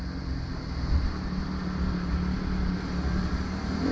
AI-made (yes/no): no